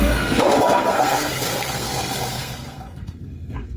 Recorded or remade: remade